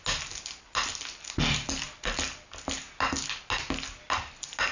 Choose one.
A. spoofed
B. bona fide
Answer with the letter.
B